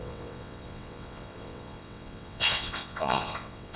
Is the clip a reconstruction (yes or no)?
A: yes